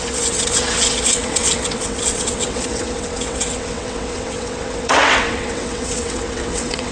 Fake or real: fake